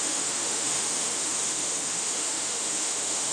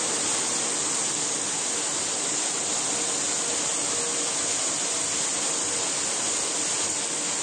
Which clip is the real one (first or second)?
second